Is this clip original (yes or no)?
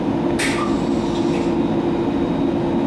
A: yes